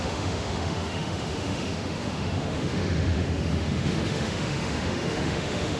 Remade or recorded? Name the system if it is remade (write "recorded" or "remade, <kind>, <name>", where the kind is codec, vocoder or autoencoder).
remade, autoencoder, DAC-VAE